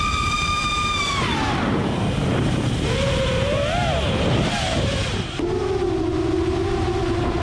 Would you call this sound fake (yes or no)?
yes